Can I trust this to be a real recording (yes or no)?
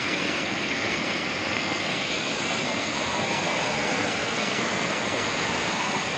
no